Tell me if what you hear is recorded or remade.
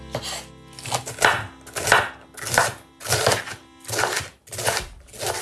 recorded